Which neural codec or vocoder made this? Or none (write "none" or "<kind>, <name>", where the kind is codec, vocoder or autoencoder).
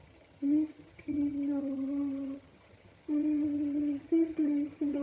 vocoder, HiFi-GAN